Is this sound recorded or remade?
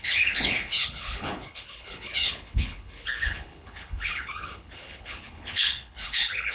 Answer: remade